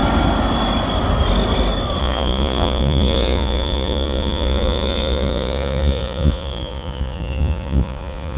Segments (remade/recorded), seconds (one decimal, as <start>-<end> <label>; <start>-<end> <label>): 0.0-2.0 recorded; 2.0-8.4 remade